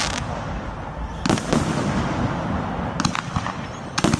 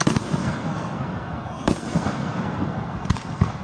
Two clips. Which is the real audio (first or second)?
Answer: first